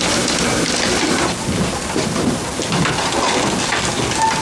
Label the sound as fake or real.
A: real